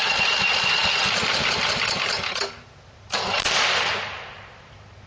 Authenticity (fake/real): real